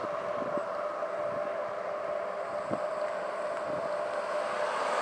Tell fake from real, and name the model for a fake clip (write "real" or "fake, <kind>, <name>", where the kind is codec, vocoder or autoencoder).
real